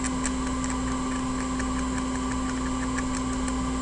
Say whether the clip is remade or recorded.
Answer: recorded